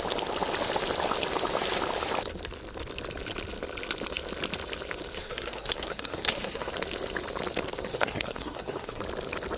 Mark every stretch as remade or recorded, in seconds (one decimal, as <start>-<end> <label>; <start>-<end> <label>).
0.0-5.2 recorded; 5.2-6.7 remade; 6.7-7.9 recorded; 7.9-9.0 remade; 9.0-9.6 recorded